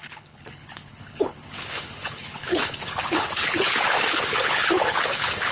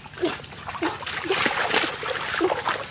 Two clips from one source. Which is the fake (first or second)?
first